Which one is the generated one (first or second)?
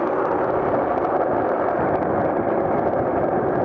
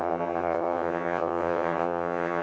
second